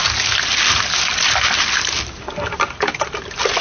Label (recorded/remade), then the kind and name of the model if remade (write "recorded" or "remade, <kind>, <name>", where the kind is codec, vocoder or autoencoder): recorded